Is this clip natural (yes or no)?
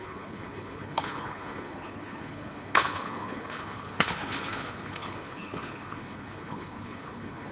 no